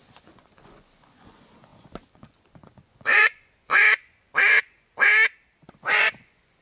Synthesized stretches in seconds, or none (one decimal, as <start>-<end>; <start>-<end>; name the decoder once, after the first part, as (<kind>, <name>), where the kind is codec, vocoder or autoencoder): 0.0-5.1 (vocoder, Vocos); 5.8-6.6